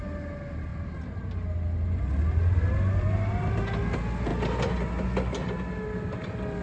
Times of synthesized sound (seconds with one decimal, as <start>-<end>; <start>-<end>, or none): none